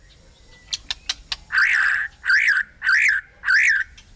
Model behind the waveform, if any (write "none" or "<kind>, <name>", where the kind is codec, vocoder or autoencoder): none